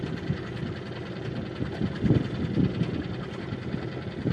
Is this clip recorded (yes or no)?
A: yes